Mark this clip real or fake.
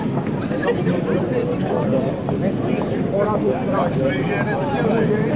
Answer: fake